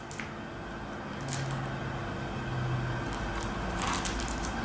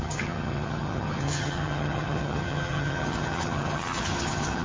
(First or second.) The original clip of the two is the first